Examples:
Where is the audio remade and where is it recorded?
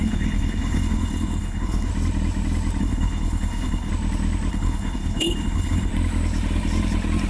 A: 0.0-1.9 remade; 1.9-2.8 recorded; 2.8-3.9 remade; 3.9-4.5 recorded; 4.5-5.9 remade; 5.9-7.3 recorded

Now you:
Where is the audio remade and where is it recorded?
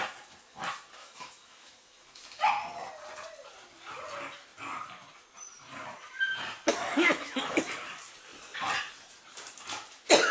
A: 0.0-1.0 recorded; 1.0-2.5 remade; 2.5-6.7 recorded; 6.7-7.6 remade; 7.6-10.3 recorded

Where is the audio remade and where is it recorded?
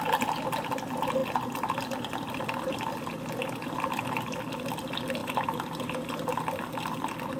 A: 0.0-7.4 recorded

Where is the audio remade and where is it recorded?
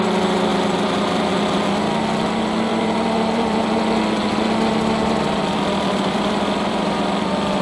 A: 0.0-0.5 recorded; 0.5-1.3 remade; 1.3-2.7 recorded; 2.7-3.8 remade; 3.8-5.4 recorded; 5.4-7.6 remade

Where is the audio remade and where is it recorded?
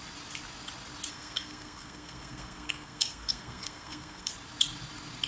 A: 0.0-1.1 recorded; 1.1-4.3 remade; 4.3-5.3 recorded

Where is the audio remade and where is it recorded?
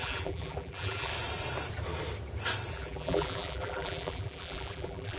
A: 0.0-1.1 remade; 1.1-2.7 recorded; 2.7-5.2 remade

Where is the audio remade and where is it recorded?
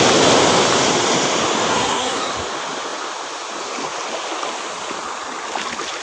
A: 0.0-1.7 recorded; 1.7-2.3 remade; 2.3-6.0 recorded